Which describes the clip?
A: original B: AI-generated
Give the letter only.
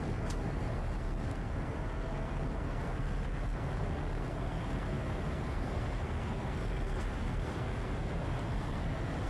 B